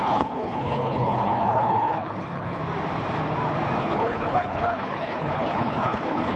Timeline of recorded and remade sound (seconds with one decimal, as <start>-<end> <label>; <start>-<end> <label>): 0.0-2.6 remade; 2.6-3.8 recorded; 3.8-6.4 remade